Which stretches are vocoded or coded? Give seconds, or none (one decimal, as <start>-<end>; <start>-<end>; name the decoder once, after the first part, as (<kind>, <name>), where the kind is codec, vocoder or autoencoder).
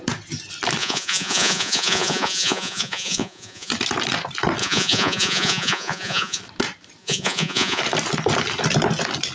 0.8-3.7 (vocoder, Vocos); 4.6-6.4; 7.0-7.8